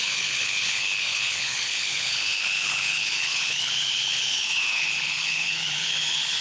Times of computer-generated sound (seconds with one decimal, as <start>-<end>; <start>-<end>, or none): 0.0-6.4